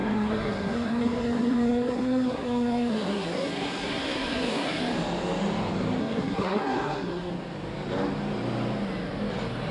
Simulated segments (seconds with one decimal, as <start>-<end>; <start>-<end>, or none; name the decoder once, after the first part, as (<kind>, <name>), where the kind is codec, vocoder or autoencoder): 0.0-4.8 (codec, SNAC); 6.0-7.3

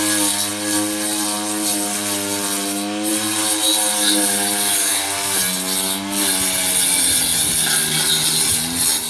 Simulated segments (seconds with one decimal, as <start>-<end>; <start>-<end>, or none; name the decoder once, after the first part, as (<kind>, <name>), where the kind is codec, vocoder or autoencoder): 4.8-5.4 (codec, SNAC)

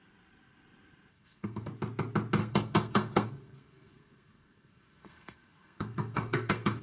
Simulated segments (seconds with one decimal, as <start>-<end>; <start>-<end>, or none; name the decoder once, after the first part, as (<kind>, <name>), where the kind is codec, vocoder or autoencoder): 1.1-1.7 (codec, SNAC); 2.4-6.8

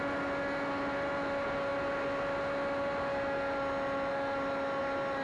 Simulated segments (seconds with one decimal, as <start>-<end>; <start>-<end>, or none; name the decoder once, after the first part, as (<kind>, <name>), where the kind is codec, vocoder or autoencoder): none

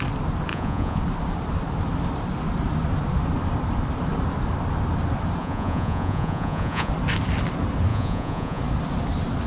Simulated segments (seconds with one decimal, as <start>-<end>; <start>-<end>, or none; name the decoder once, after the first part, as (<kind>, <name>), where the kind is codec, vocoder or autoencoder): 0.5-1.0 (vocoder, Vocos); 5.4-6.9; 7.9-8.6